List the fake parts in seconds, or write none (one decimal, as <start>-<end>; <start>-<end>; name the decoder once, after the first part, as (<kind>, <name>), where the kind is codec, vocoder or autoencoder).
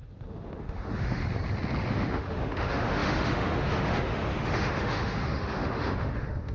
0.0-1.2 (autoencoder, DAC-VAE); 1.9-6.5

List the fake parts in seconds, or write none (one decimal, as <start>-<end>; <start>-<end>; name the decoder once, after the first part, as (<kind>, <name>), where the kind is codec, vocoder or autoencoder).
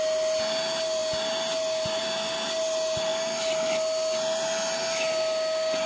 none